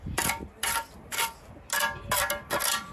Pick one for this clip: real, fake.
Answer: real